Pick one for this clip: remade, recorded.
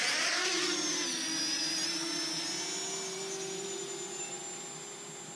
recorded